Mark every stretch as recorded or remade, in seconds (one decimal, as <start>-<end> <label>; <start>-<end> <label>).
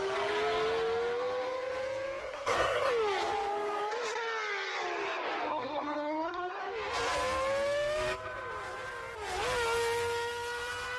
0.0-2.2 recorded; 2.2-2.9 remade; 2.9-5.5 recorded; 5.5-6.6 remade; 6.6-11.0 recorded